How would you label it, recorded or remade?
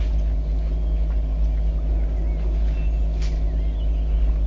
recorded